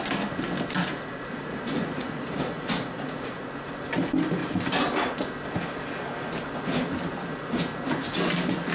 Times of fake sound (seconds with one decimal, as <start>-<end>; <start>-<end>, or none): 0.9-3.5